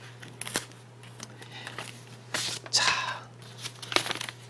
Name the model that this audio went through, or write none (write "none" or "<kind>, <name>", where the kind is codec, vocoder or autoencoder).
none